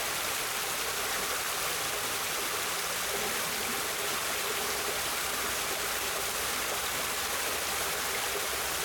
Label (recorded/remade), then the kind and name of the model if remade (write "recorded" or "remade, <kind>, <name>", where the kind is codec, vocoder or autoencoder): recorded